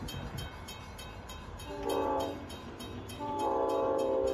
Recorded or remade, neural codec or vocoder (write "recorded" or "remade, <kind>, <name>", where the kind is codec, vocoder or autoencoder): remade, vocoder, BigVGAN v2